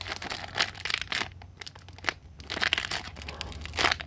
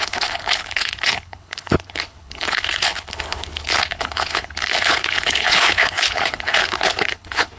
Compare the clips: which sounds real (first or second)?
first